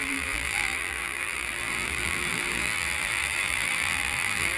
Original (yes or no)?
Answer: no